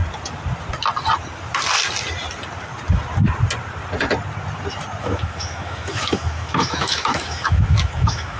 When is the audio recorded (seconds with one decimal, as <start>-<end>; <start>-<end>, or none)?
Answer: 0.0-5.0